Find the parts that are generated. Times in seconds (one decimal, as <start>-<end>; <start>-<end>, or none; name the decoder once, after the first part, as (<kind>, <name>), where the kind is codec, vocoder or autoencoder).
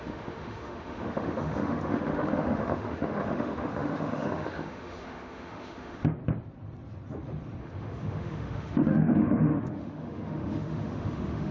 0.0-6.2 (autoencoder, DAC-VAE); 7.6-11.5